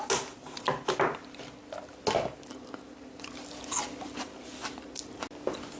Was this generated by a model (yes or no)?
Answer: no